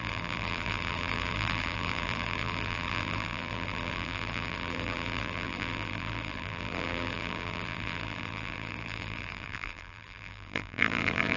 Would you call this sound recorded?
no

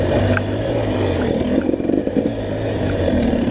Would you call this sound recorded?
no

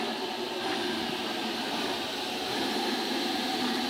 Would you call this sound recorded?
no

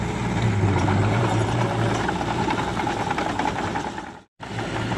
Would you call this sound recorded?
no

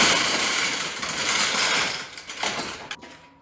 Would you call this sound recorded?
no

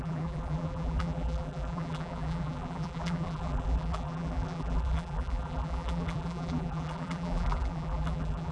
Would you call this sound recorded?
no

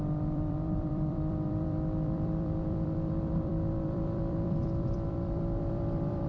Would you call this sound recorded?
no